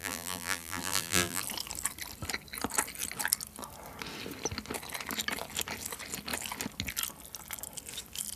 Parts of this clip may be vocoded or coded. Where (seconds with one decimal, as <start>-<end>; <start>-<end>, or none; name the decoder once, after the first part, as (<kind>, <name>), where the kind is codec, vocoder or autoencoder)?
0.0-1.4 (vocoder, BigVGAN v2)